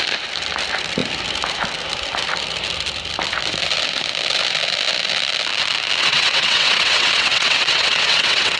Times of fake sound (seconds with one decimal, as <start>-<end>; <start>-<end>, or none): 6.0-8.6